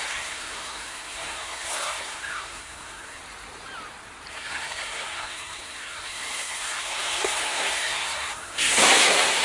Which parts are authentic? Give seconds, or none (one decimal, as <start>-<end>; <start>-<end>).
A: 3.2-4.3